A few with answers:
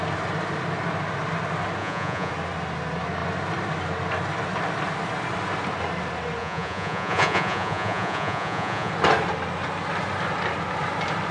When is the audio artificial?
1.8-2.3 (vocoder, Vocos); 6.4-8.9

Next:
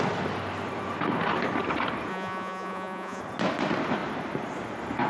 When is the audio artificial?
2.1-3.2 (vocoder, Vocos)

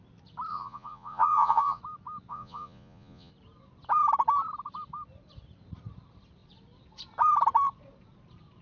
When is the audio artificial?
0.5-1.8 (vocoder, Vocos); 2.3-3.3

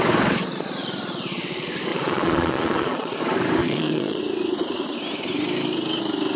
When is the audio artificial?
0.4-1.4 (vocoder, Vocos); 1.9-3.2; 3.6-4.2

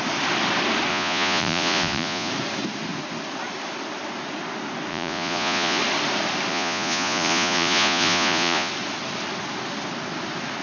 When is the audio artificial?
0.9-2.3 (vocoder, Vocos); 4.9-5.8; 6.5-8.7